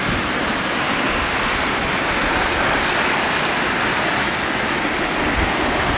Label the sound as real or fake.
real